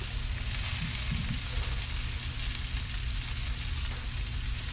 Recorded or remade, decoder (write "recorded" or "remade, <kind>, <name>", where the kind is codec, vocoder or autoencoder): recorded